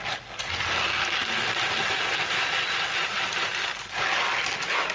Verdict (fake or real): real